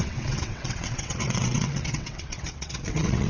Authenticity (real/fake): fake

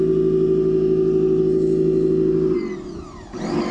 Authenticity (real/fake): real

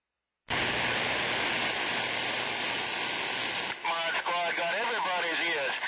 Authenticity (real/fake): real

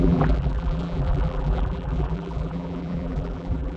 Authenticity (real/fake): fake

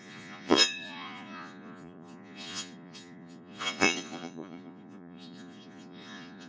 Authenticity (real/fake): fake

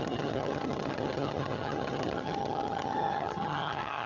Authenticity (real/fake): fake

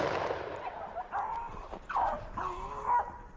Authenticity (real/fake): real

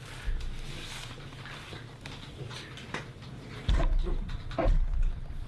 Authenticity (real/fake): real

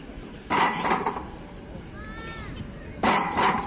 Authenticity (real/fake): real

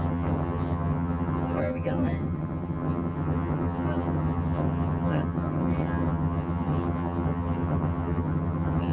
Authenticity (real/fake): fake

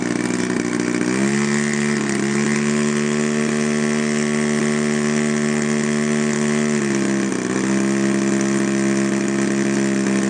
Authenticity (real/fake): real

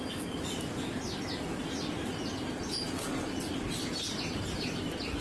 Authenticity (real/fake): real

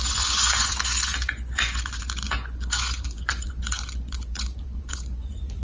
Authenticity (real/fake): fake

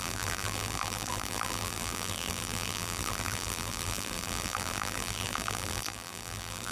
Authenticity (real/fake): fake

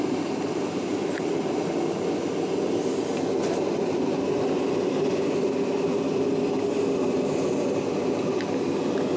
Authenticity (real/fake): real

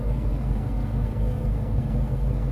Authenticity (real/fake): fake